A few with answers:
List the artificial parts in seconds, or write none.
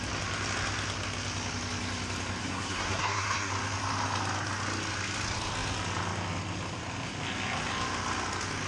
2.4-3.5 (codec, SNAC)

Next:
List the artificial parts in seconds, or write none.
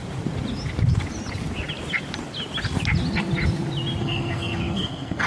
4.0-5.3 (codec, SNAC)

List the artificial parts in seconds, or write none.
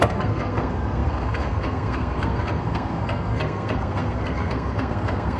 0.0-5.4 (codec, SNAC)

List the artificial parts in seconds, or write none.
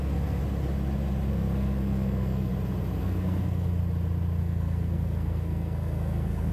0.0-0.4 (codec, SNAC); 1.3-2.5; 3.0-3.8; 4.4-6.5